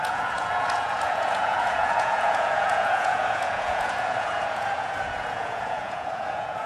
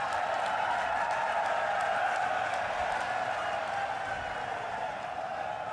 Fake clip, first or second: first